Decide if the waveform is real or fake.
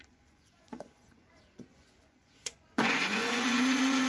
fake